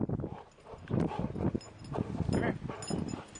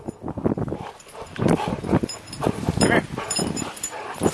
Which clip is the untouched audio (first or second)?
first